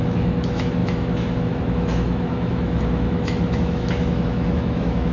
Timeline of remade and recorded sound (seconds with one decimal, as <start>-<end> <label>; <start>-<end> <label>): 0.0-5.1 remade